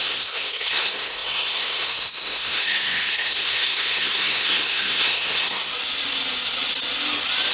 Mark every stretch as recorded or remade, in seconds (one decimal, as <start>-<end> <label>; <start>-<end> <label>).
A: 0.0-5.7 remade; 5.7-7.5 recorded